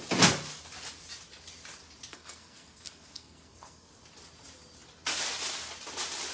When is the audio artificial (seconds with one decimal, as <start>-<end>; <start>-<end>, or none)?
2.1-3.9